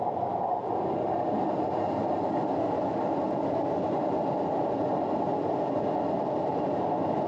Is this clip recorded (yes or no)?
yes